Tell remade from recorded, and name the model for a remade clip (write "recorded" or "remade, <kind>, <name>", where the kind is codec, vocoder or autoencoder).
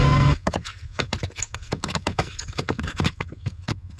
remade, codec, SNAC